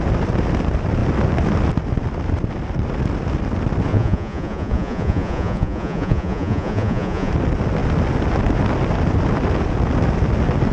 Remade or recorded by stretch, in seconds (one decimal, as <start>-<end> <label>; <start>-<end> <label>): 0.0-3.9 recorded; 3.9-7.3 remade; 7.3-10.7 recorded